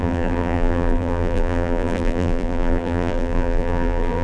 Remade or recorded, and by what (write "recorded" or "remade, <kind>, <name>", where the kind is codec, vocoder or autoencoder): remade, vocoder, BigVGAN v2